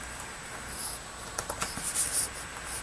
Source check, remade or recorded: recorded